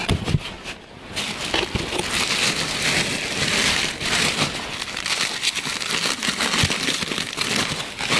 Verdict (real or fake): real